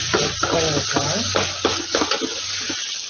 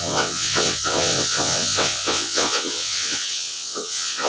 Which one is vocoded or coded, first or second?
second